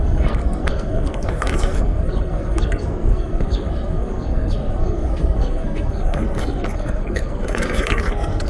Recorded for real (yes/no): no